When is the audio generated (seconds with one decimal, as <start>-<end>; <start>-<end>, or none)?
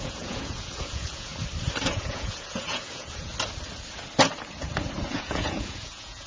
0.0-1.3; 1.9-3.3; 5.0-6.3